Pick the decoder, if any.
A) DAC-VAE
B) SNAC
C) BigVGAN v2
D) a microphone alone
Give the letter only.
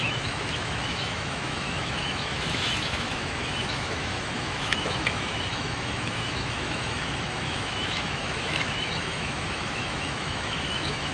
A